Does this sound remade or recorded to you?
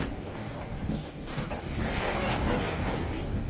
remade